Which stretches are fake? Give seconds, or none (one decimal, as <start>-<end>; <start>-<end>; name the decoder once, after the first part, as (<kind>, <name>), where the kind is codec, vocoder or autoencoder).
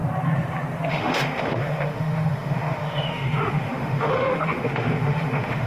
0.9-5.7 (autoencoder, DAC-VAE)